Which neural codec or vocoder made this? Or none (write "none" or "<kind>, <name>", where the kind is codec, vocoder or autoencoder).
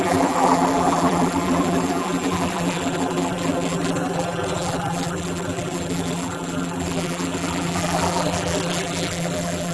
vocoder, BigVGAN v2